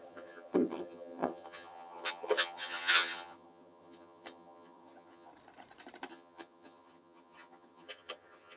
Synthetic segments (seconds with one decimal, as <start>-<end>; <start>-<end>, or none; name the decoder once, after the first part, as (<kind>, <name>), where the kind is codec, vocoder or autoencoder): 0.0-5.3 (vocoder, HiFi-GAN); 6.1-8.6